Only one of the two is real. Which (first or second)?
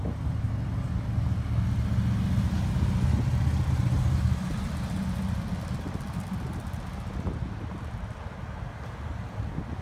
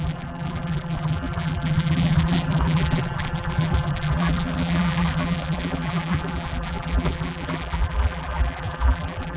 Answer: first